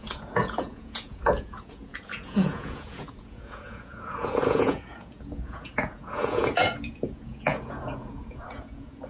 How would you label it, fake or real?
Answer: fake